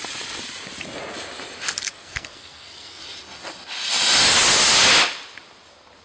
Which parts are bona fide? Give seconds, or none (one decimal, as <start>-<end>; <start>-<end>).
0.0-1.8; 3.0-6.0